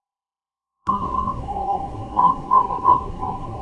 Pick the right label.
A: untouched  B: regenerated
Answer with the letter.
B